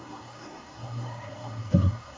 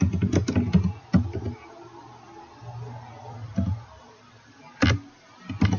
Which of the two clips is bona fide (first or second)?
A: second